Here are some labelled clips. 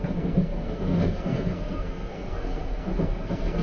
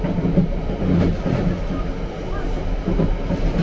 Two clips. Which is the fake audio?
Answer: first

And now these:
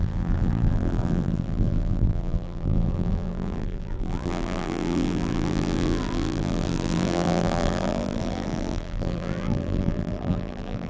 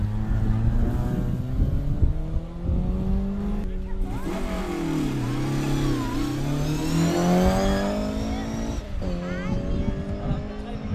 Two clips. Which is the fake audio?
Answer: first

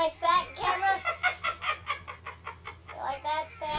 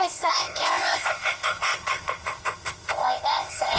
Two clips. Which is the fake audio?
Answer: second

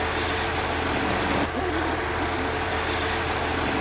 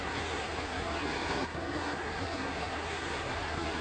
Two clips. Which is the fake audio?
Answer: second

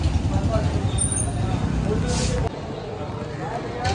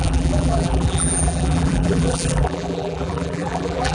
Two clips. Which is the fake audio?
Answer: second